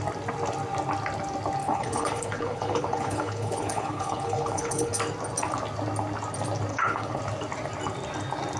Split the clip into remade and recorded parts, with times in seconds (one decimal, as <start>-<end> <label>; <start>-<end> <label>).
0.0-1.6 recorded; 1.6-4.9 remade; 4.9-6.7 recorded; 6.7-7.2 remade; 7.2-8.6 recorded